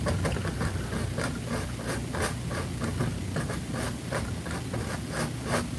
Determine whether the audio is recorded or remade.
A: recorded